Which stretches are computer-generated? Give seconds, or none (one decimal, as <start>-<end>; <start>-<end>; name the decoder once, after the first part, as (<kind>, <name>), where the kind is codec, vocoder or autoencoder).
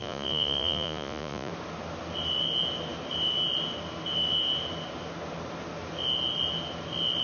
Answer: 0.0-1.5 (vocoder, Vocos)